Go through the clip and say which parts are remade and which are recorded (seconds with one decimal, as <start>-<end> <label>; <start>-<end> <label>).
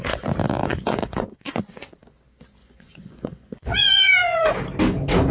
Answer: 0.0-0.6 recorded; 0.6-1.6 remade; 1.6-2.6 recorded; 2.6-4.5 remade; 4.5-5.3 recorded